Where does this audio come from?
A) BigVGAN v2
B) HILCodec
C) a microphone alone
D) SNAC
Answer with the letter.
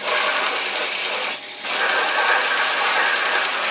C